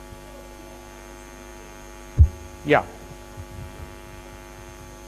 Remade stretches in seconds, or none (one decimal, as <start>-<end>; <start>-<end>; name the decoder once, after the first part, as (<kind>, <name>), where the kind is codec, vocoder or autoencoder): none